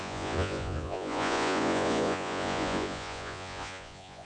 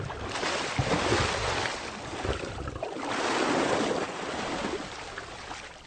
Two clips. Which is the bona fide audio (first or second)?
second